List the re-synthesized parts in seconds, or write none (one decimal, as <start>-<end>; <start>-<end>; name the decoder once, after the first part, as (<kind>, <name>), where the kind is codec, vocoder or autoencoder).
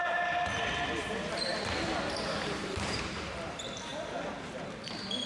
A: 1.0-3.5 (vocoder, BigVGAN v2)